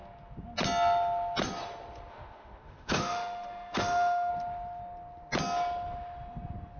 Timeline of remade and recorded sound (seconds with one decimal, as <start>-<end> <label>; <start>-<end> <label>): 0.0-2.1 recorded; 2.1-4.3 remade; 4.3-6.8 recorded